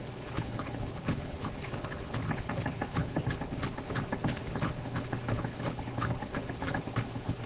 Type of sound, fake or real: fake